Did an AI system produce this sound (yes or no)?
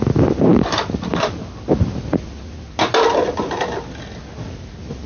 no